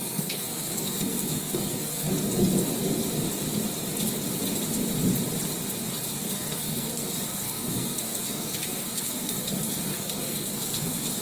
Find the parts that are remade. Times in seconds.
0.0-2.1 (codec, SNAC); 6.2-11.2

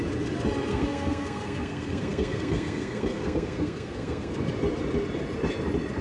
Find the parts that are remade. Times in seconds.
0.7-4.3 (codec, SNAC)

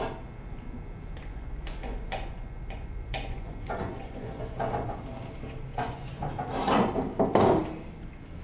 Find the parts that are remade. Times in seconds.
1.2-5.0 (vocoder, Vocos); 5.7-6.3

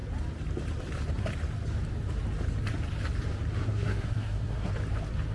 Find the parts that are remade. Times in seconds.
3.6-4.7 (codec, SNAC)

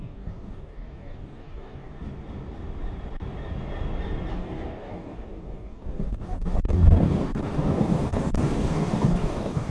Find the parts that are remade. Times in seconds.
0.0-1.9 (codec, DAC); 4.3-9.7

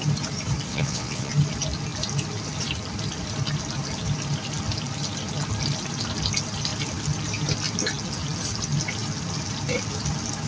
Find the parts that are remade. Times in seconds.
0.7-1.3 (vocoder, WaveNeXt)

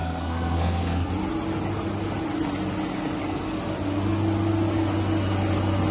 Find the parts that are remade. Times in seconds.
0.0-1.1 (codec, SNAC)